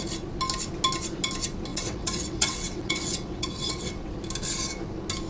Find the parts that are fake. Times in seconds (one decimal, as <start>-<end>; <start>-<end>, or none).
1.7-4.1